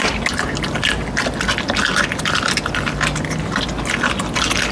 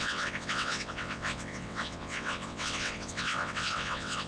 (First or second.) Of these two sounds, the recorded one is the first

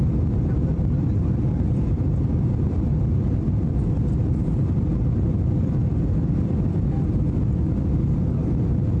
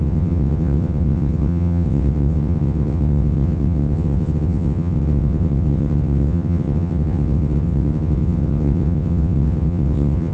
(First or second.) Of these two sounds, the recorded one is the first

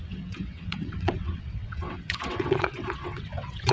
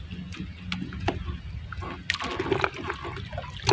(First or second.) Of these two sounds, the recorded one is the second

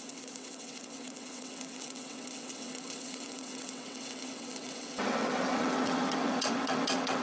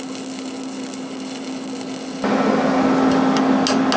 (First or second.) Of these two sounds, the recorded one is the second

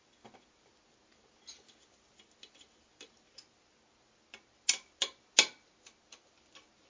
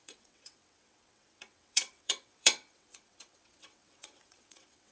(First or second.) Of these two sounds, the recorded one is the first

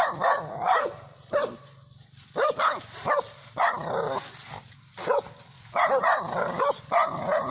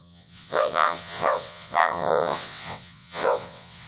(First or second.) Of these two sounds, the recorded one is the first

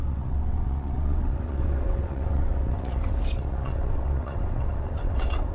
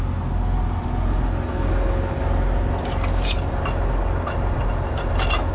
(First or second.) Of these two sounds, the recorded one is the second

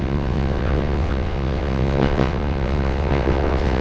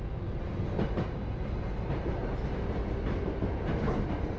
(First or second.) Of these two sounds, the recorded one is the second